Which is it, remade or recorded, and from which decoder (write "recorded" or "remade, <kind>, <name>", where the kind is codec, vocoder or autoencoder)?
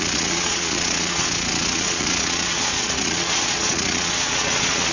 remade, vocoder, Vocos